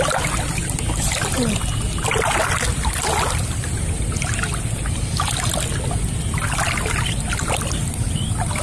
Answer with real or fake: real